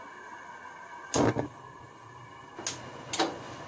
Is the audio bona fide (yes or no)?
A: yes